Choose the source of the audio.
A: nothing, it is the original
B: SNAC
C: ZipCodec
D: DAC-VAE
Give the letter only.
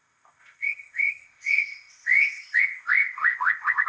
C